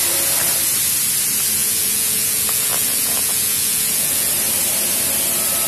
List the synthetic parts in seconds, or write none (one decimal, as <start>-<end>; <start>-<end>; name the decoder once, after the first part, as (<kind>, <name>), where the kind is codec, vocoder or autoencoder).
1.6-4.3 (vocoder, Vocos)